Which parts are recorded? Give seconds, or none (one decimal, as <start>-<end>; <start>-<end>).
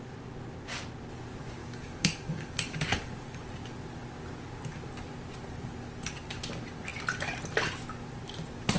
0.0-1.6; 3.4-8.8